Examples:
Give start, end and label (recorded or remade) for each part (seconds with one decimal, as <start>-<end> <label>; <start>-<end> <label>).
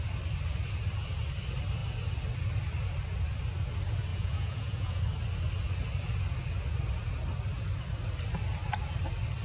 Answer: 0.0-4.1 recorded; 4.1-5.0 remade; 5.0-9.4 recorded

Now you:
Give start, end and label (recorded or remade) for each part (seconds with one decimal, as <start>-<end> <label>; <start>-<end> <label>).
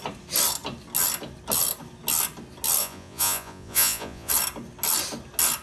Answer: 0.0-2.8 recorded; 2.8-4.3 remade; 4.3-5.6 recorded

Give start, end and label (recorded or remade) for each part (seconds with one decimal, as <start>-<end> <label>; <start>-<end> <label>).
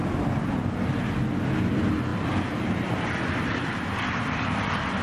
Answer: 0.0-1.0 remade; 1.0-2.1 recorded; 2.1-4.6 remade; 4.6-5.0 recorded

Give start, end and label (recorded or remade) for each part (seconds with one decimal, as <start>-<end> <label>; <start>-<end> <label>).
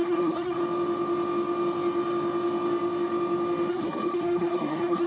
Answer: 0.0-0.6 remade; 0.6-3.7 recorded; 3.7-5.1 remade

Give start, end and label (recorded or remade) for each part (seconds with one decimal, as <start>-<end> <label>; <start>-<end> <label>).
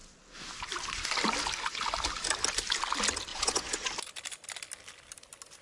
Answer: 0.0-3.3 recorded; 3.3-3.9 remade; 3.9-5.6 recorded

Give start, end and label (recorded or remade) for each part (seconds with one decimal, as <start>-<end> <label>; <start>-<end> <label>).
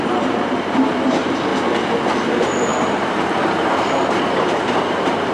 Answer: 0.0-1.5 remade; 1.5-2.1 recorded; 2.1-5.3 remade